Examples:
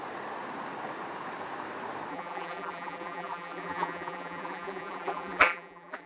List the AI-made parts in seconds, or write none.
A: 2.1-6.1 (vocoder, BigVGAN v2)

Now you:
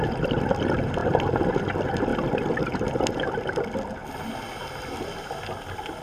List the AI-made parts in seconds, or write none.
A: none

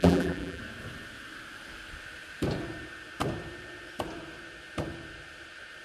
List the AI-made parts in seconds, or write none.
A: 0.0-0.6 (vocoder, BigVGAN v2)

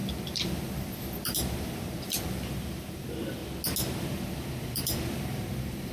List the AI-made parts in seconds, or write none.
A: 0.0-3.4 (vocoder, BigVGAN v2); 4.1-5.9

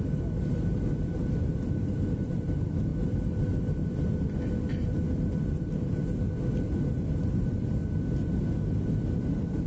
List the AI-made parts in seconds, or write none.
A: 0.0-2.9 (vocoder, BigVGAN v2); 7.1-7.8; 9.2-9.7

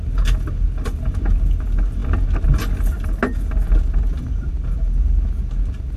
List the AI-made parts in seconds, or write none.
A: none

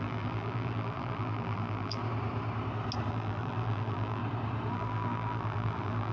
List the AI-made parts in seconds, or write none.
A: 0.0-2.0 (vocoder, BigVGAN v2); 3.1-4.2; 4.7-6.1

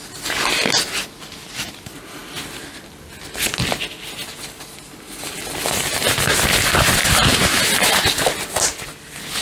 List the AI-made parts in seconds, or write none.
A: 7.0-7.6 (vocoder, BigVGAN v2)